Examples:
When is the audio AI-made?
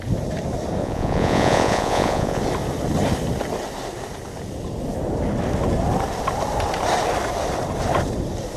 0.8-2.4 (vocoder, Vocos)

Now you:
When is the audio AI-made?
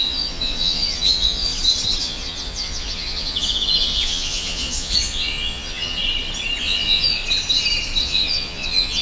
0.0-1.5 (vocoder, Vocos); 2.0-6.0; 6.6-7.2; 8.0-9.0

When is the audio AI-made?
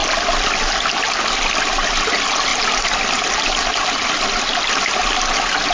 none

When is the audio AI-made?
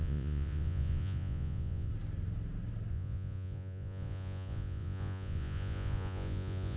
0.0-1.9 (vocoder, Vocos); 2.9-6.8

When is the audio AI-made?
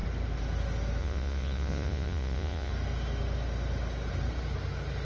1.0-2.7 (vocoder, Vocos)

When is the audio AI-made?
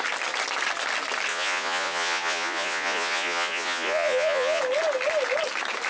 1.3-4.6 (vocoder, Vocos)